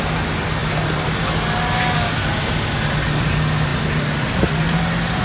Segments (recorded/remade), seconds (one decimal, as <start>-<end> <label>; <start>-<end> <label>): 0.0-5.2 recorded

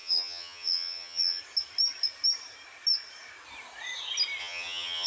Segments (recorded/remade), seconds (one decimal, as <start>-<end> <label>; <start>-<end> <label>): 0.0-1.4 remade; 1.4-4.4 recorded; 4.4-5.1 remade